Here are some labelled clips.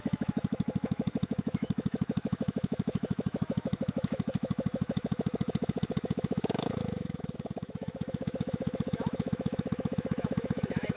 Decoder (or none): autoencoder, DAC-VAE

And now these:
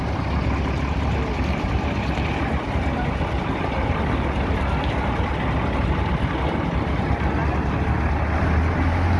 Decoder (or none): none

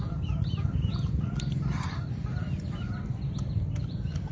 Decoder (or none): vocoder, BigVGAN v2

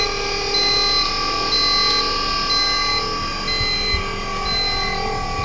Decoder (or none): none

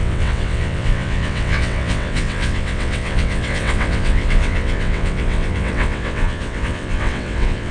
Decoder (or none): vocoder, WaveNeXt